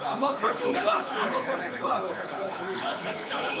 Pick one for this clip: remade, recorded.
remade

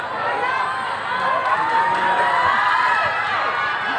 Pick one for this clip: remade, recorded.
recorded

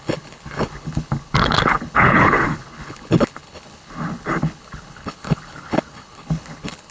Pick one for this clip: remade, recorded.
remade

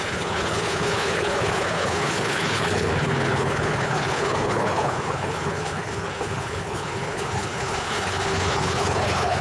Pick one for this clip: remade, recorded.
remade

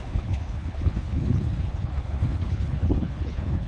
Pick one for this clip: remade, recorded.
remade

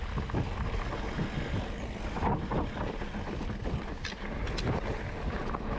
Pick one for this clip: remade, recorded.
recorded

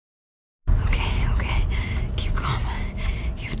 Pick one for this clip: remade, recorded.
recorded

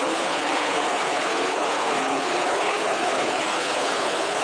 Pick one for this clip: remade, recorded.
remade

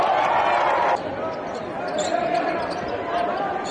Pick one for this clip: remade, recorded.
recorded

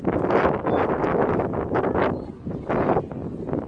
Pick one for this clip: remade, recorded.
recorded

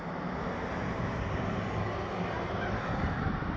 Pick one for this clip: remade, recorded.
recorded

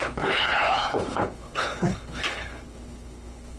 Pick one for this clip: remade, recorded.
remade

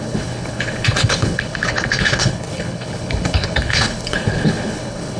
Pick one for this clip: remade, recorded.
remade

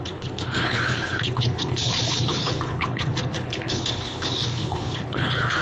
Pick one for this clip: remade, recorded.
remade